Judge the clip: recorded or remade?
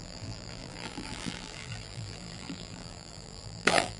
remade